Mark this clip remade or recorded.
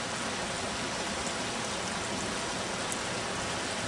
recorded